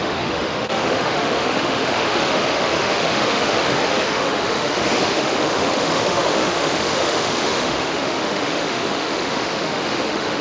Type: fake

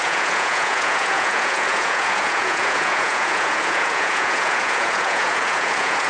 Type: fake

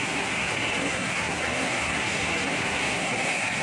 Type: fake